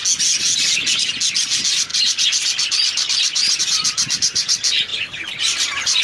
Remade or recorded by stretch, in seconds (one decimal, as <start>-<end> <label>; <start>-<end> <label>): 0.0-1.9 recorded; 1.9-3.6 remade; 3.6-4.9 recorded; 4.9-6.0 remade